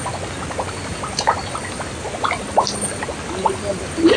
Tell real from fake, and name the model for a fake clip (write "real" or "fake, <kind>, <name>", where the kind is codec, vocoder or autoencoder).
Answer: real